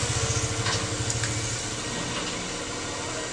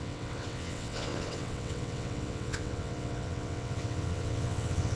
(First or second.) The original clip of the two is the first